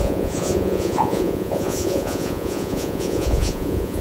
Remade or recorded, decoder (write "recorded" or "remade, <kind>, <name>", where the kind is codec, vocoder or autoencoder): remade, vocoder, Vocos